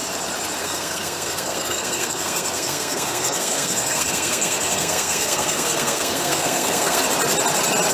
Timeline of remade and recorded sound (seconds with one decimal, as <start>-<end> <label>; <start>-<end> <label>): 0.0-0.6 recorded; 0.6-7.0 remade; 7.0-7.9 recorded